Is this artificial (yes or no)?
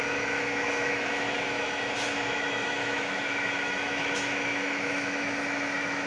yes